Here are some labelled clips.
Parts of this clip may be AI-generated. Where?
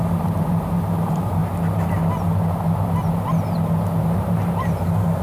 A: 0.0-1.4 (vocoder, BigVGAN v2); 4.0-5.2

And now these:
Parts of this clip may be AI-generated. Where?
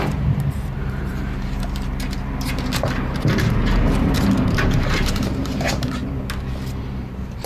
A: 0.0-6.0 (vocoder, BigVGAN v2); 6.8-7.5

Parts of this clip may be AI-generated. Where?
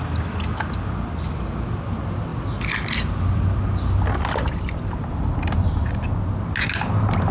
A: none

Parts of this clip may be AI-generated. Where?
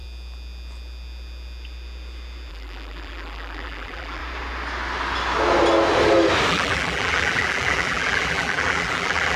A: 2.5-4.2 (vocoder, BigVGAN v2); 6.5-9.4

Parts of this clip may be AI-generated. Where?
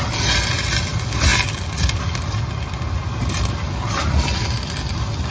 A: none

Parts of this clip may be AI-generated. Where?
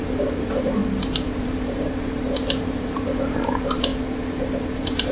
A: 0.0-0.8 (vocoder, BigVGAN v2); 1.4-3.9; 4.4-5.1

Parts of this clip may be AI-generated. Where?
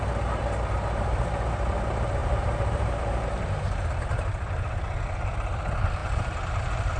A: 2.2-3.5 (vocoder, BigVGAN v2)